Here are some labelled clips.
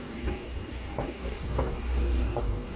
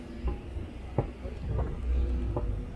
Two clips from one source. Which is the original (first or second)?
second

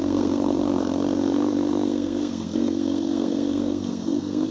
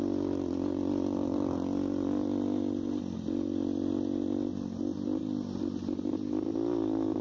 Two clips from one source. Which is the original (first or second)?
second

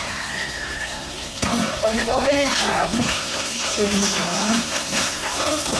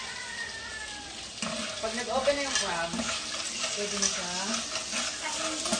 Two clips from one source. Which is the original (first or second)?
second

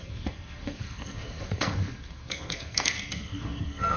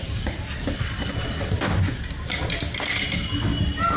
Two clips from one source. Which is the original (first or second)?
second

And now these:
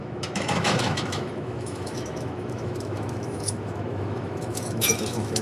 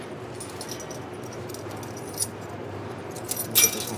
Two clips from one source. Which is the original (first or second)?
second